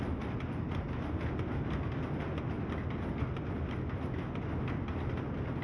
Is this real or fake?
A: real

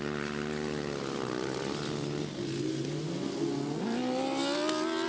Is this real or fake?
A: real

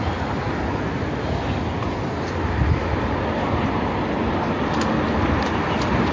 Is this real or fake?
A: real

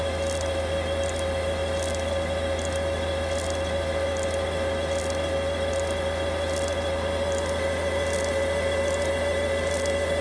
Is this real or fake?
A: real